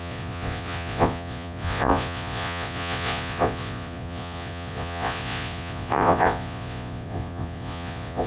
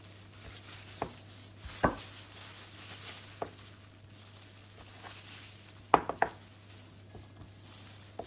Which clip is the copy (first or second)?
first